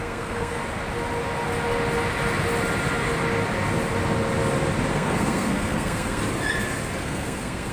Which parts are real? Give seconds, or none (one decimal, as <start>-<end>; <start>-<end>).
0.6-4.9; 6.2-7.0